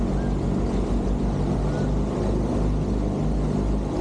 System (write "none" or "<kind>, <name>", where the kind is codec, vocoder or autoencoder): none